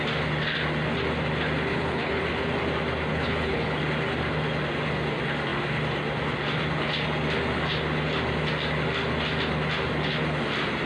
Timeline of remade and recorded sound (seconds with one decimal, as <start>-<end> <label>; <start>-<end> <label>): 0.0-1.7 recorded; 1.7-2.2 remade; 2.2-3.1 recorded; 3.1-3.8 remade; 3.8-10.9 recorded